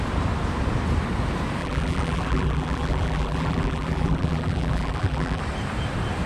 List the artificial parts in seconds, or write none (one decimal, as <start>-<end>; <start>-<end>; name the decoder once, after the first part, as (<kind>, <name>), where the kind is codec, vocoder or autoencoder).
1.6-5.4 (vocoder, BigVGAN v2)